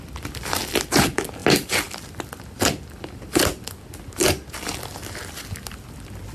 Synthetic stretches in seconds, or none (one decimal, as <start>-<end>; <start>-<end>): none